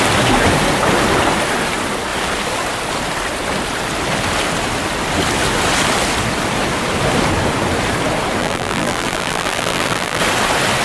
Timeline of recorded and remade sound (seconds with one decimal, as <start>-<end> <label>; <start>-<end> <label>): 0.0-8.4 recorded; 8.4-10.2 remade; 10.2-10.8 recorded